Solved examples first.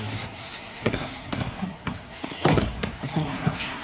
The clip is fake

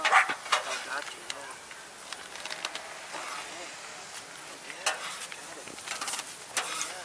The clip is real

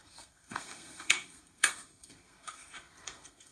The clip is fake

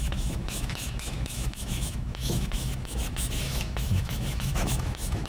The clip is fake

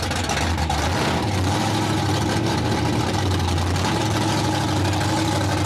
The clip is real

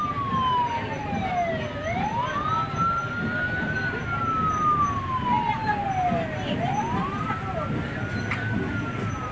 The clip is real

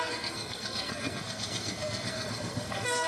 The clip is fake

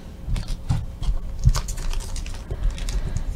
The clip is real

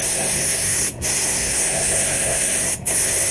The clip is fake